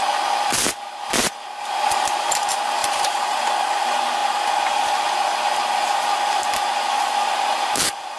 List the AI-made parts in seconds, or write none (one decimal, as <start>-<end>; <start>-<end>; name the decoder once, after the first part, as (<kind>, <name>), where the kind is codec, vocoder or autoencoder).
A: 2.8-3.4 (vocoder, BigVGAN v2)

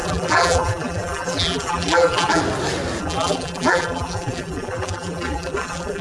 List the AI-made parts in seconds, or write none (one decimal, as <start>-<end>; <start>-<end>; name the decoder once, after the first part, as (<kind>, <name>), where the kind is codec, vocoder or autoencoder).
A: 0.0-2.4 (vocoder, BigVGAN v2); 3.0-6.0

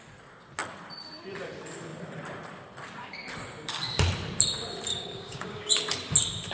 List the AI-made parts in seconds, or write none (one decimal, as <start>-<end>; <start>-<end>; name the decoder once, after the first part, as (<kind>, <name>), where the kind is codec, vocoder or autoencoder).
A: 4.9-5.8 (codec, DAC)

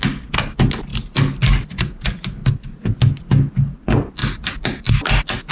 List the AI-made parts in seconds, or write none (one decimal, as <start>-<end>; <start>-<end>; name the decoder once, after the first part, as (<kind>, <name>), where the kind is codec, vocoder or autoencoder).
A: none

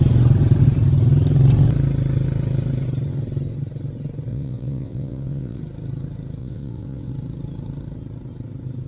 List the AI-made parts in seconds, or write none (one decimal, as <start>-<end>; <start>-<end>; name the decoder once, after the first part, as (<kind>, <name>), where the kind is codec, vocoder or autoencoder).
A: 4.3-5.6 (vocoder, WaveNeXt); 6.4-7.1

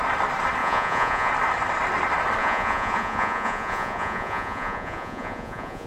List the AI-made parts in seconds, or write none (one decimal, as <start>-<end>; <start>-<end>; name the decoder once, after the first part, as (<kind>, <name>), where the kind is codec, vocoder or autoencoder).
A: 0.6-1.3 (vocoder, Vocos); 2.4-5.9

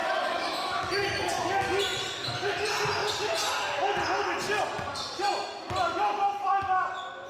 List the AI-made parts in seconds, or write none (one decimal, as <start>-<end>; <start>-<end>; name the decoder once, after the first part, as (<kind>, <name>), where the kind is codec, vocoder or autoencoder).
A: 0.0-0.9 (autoencoder, DAC-VAE)